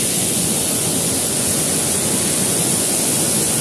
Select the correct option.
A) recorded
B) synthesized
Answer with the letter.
B